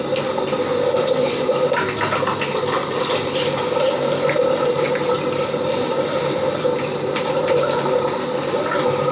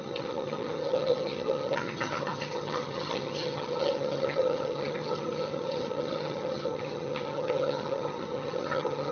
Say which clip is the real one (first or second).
first